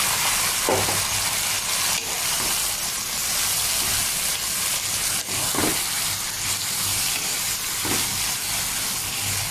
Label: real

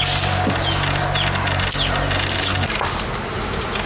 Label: real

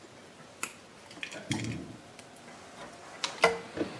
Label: real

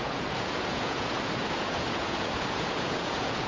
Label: fake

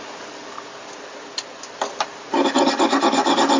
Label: real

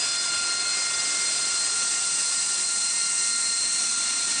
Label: real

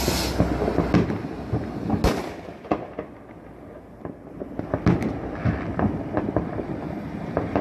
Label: real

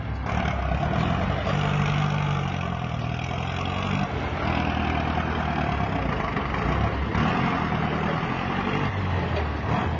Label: real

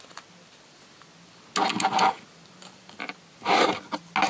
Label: real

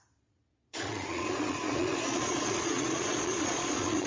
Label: fake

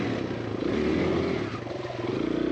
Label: real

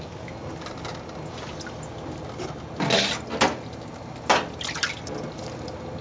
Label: real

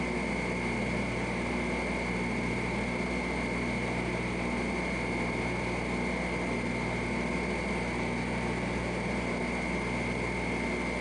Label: real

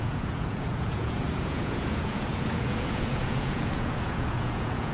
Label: fake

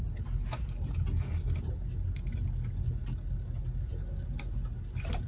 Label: real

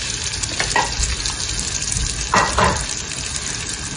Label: real